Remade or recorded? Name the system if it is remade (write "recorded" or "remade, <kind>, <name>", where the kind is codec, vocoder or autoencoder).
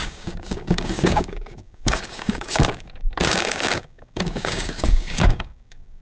remade, codec, DAC